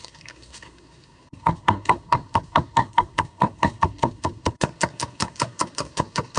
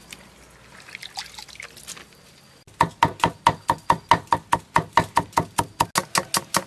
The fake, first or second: first